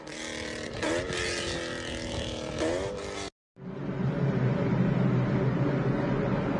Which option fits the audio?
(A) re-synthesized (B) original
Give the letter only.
B